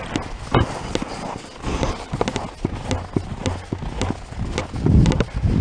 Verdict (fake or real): real